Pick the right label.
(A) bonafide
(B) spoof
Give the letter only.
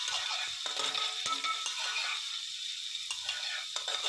A